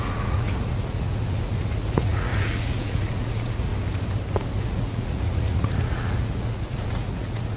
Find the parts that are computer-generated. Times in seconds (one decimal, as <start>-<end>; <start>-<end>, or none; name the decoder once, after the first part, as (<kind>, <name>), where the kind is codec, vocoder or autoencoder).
0.0-3.7 (vocoder, Vocos); 4.6-7.6